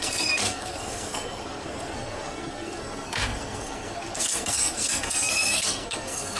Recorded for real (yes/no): no